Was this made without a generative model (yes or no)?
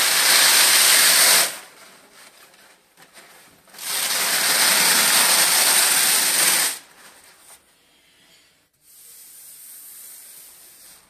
yes